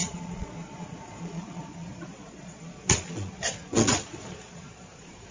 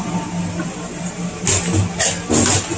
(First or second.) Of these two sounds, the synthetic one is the first